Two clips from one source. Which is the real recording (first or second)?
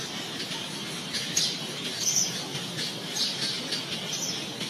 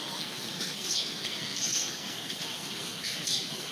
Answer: first